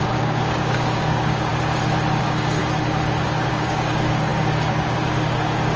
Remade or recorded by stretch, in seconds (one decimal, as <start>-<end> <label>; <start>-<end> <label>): 0.0-1.5 remade; 1.5-2.2 recorded; 2.2-2.6 remade; 2.6-3.5 recorded; 3.5-5.8 remade